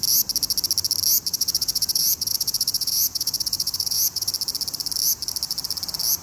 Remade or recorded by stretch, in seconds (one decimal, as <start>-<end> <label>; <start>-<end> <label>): 0.0-1.3 recorded; 1.3-4.3 remade; 4.3-6.2 recorded